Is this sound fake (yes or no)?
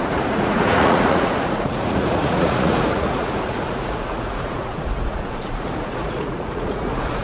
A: yes